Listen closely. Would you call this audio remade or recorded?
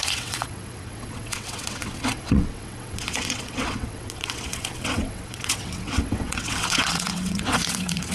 remade